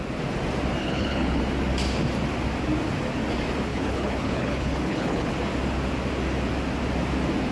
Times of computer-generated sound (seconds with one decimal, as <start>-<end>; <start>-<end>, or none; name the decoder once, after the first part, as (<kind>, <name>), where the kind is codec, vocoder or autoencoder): 0.8-1.4 (codec, HILCodec); 3.7-5.3